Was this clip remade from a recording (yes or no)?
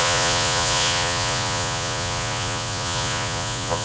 yes